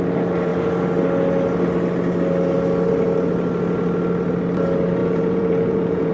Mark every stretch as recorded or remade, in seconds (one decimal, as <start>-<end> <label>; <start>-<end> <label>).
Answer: 0.0-5.0 recorded; 5.0-6.1 remade

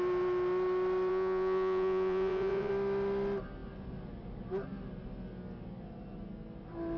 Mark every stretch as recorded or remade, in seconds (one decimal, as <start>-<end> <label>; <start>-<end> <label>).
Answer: 0.0-1.1 recorded; 1.1-2.7 remade; 2.7-7.0 recorded

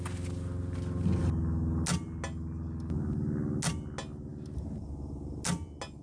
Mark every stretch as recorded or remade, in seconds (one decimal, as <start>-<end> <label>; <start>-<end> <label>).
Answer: 0.0-6.0 recorded